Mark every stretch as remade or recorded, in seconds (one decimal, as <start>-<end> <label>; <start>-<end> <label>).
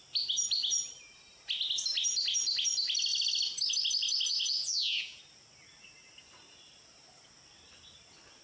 0.0-4.3 recorded; 4.3-5.2 remade; 5.2-8.4 recorded